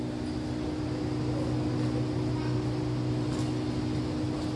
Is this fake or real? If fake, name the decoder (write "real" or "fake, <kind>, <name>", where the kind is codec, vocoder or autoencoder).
real